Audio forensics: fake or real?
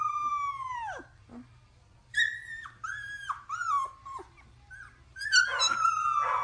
real